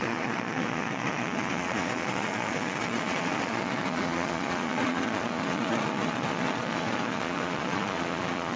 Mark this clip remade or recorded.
remade